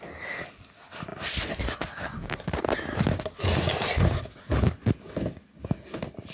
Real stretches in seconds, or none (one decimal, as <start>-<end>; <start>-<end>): 0.0-6.3